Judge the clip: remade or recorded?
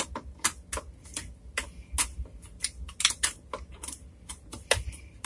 recorded